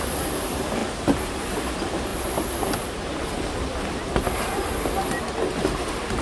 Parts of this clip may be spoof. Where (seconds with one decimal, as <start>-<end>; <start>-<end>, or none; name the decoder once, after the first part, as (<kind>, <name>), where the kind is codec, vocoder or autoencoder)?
none